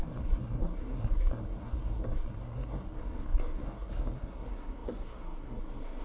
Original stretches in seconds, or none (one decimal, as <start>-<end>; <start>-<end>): none